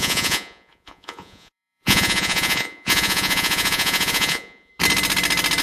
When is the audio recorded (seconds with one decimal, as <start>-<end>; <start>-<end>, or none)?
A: 4.7-5.6